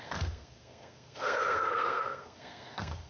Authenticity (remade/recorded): remade